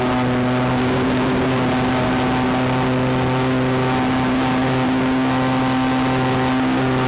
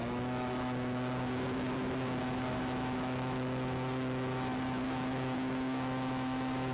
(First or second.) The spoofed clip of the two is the second